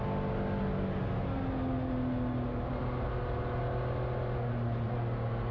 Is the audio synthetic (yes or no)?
no